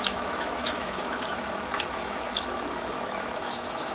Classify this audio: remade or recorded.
remade